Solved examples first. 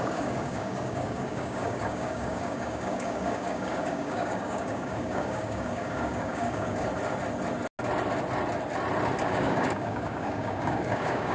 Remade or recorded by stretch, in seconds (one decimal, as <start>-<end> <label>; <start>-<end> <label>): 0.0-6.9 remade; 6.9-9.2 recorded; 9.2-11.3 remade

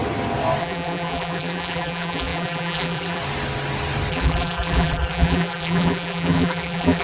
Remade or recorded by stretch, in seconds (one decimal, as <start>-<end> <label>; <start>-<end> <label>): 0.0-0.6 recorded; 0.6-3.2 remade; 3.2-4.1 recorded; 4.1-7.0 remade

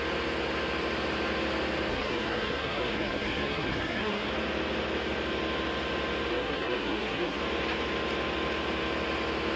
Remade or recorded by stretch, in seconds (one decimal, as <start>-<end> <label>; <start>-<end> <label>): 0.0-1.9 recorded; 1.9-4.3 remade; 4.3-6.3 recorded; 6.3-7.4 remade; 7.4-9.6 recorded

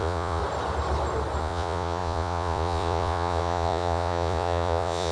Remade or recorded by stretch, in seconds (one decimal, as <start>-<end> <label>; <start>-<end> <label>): 0.0-0.4 remade; 0.4-1.4 recorded; 1.4-5.1 remade

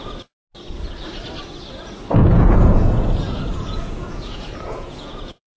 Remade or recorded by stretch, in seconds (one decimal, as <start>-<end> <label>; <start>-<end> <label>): 0.0-2.2 recorded; 2.2-5.6 remade

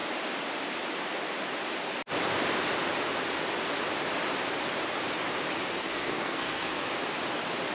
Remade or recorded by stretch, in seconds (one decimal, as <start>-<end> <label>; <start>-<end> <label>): 0.0-5.8 recorded; 5.8-6.9 remade; 6.9-7.7 recorded